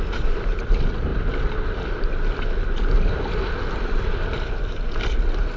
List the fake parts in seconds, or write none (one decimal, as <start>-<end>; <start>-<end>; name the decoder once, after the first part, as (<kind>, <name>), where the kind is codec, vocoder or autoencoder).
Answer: none